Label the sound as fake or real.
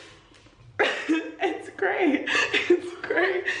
real